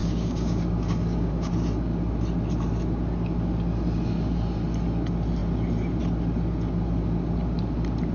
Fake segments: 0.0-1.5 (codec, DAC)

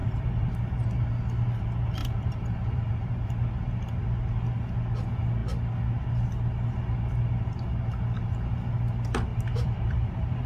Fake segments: 0.0-0.5 (vocoder, BigVGAN v2); 2.0-3.1; 9.3-10.5

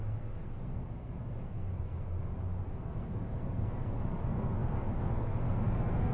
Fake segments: 0.0-2.3 (codec, SNAC); 2.8-6.1

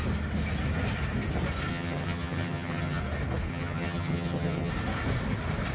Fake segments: 1.7-3.0 (vocoder, HiFi-GAN); 3.5-4.7

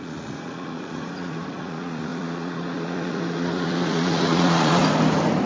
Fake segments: 0.0-4.8 (vocoder, Vocos)

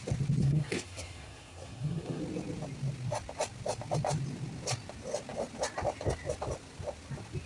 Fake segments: 0.4-2.2 (codec, SNAC)

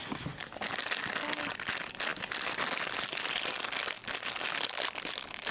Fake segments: 0.0-0.7 (vocoder, BigVGAN v2); 2.1-3.6